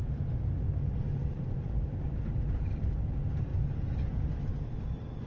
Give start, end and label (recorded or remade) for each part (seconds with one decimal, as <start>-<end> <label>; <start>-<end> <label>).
0.0-1.2 recorded; 1.2-3.1 remade; 3.1-5.3 recorded